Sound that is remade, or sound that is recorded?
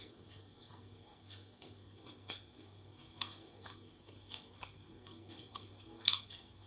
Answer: remade